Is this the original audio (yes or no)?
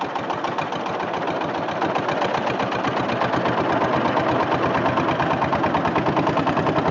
yes